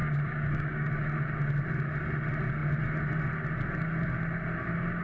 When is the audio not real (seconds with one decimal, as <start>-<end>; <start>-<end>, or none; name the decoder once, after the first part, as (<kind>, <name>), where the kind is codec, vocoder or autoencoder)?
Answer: 0.0-0.9 (codec, DAC)